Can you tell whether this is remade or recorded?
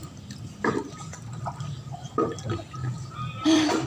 recorded